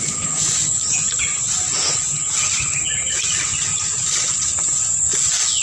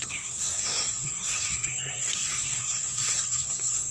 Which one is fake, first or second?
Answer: second